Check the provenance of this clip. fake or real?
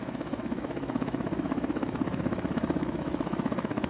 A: fake